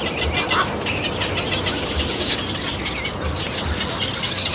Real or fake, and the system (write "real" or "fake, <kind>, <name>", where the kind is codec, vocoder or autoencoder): real